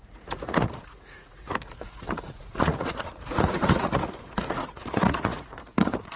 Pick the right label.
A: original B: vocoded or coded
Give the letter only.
B